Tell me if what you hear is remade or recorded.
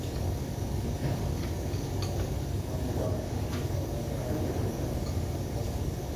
remade